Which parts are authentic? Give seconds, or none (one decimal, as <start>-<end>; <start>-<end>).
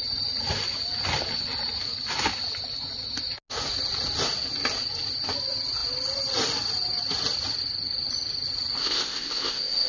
0.0-8.8